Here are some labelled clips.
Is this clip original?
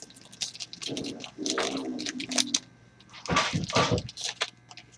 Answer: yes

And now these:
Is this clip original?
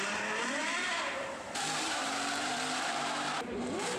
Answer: no